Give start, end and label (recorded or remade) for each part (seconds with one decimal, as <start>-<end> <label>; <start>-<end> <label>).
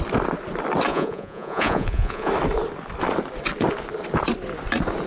0.0-0.9 recorded; 0.9-2.3 remade; 2.3-5.1 recorded